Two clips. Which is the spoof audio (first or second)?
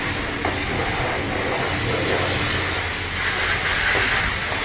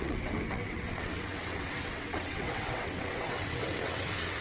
second